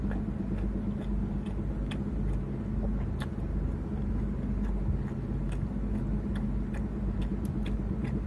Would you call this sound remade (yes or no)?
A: no